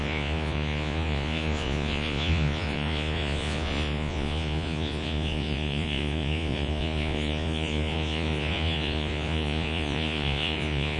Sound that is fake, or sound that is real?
fake